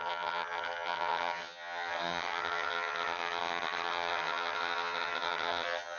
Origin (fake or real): fake